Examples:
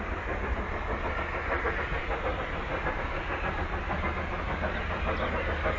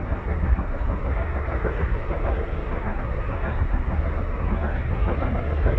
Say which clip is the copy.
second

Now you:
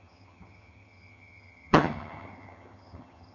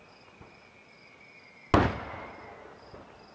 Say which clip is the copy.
first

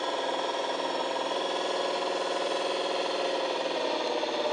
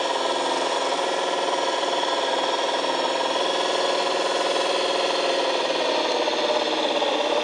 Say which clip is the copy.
second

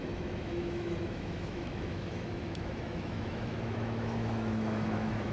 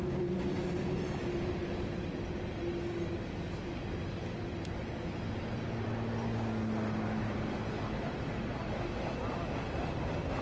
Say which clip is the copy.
first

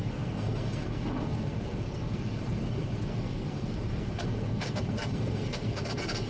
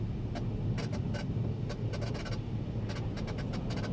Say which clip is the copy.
first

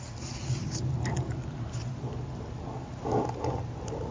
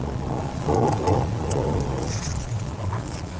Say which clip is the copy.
second